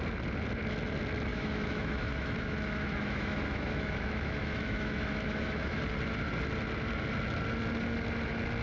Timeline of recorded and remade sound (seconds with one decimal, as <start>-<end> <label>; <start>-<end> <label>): 0.0-1.3 recorded; 1.3-5.8 remade; 5.8-8.6 recorded